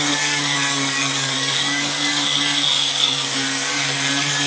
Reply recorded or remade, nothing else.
remade